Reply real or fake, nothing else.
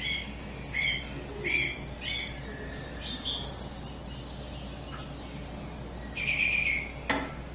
real